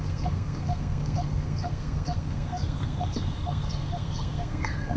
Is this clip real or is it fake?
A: fake